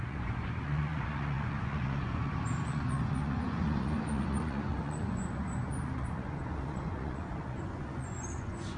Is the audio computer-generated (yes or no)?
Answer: yes